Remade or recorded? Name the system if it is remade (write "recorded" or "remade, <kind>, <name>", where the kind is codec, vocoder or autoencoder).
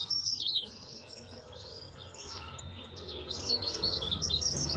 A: remade, codec, SNAC